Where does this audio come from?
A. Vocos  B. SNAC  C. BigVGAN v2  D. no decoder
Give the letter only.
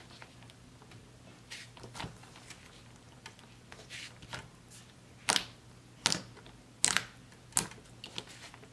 D